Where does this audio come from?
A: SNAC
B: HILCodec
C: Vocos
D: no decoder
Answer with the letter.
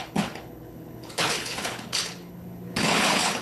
B